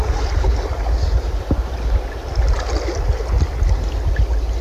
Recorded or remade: recorded